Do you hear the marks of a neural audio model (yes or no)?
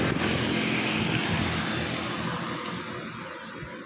no